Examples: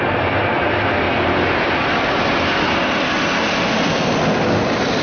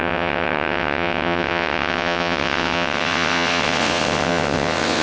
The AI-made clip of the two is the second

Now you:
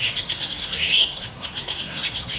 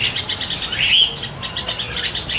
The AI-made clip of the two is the first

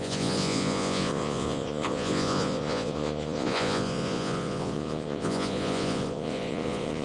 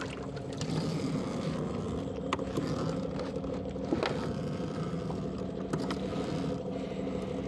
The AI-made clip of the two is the first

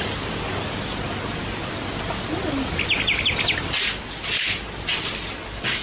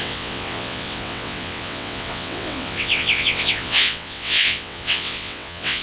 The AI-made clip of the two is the second